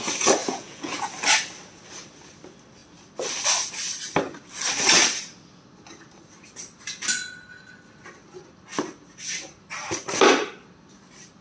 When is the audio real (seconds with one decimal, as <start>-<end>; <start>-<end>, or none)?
0.0-0.4; 0.9-11.4